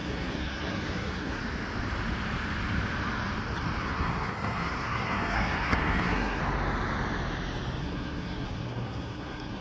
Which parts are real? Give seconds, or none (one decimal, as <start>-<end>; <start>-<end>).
1.4-3.8; 6.4-7.8